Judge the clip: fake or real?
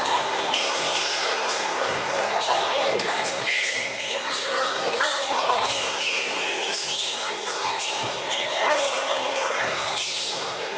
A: fake